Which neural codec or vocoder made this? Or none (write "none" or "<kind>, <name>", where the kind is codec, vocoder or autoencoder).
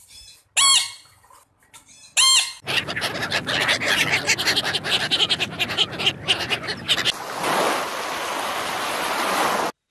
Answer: none